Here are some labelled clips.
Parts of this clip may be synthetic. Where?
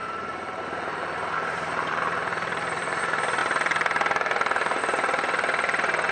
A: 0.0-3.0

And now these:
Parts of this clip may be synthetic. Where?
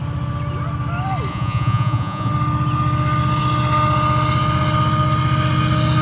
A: 1.3-2.3